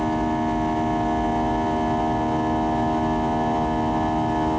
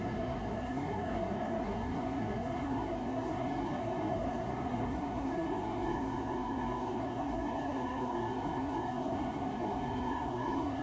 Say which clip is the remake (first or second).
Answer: second